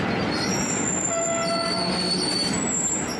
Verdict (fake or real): real